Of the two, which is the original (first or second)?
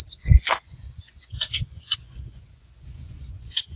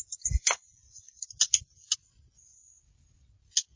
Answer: second